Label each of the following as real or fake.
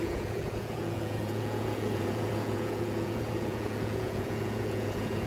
fake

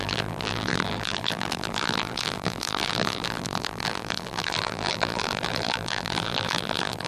fake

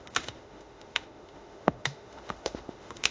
fake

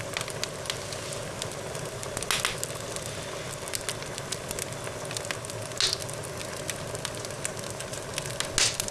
real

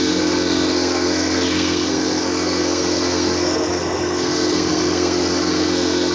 fake